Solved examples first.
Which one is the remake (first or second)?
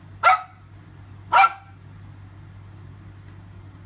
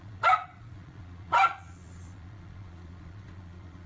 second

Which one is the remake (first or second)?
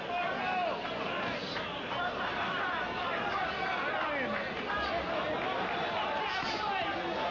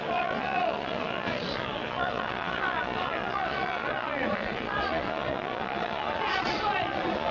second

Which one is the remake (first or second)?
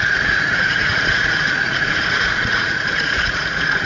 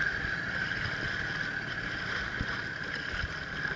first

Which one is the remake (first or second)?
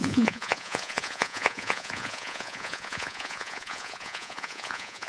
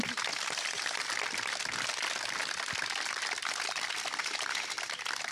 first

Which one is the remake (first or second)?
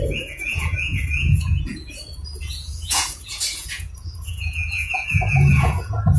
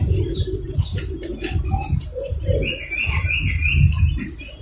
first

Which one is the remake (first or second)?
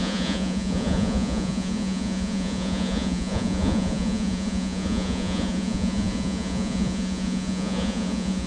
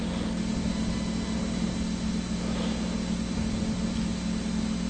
first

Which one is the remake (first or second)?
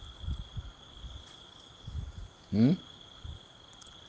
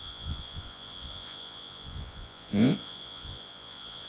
second